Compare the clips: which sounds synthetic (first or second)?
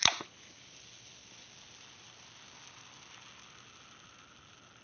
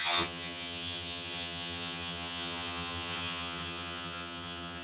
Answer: second